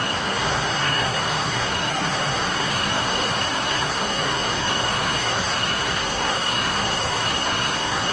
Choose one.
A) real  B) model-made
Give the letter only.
B